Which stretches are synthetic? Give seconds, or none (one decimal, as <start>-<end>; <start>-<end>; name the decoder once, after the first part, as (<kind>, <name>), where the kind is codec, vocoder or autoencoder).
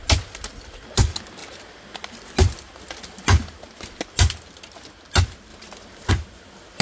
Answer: 5.5-6.1 (vocoder, BigVGAN v2)